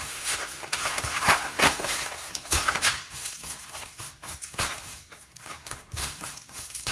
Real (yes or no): no